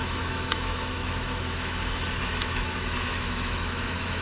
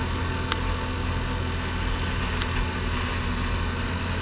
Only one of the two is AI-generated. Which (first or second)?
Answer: first